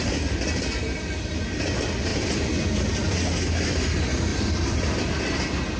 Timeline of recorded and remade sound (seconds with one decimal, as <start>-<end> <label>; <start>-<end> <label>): 0.0-2.1 recorded; 2.1-2.9 remade; 2.9-5.8 recorded